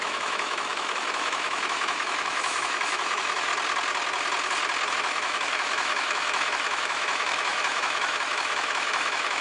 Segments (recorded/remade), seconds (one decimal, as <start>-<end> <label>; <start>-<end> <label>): 0.0-3.5 remade; 3.5-4.9 recorded; 4.9-9.4 remade